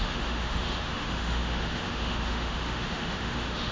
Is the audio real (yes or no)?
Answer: no